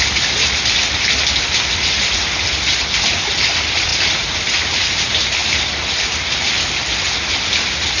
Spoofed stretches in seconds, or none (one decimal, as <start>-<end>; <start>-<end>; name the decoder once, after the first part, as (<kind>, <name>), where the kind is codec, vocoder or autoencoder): none